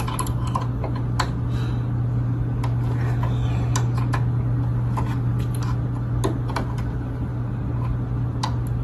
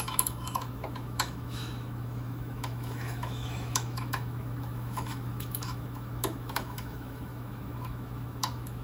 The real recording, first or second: first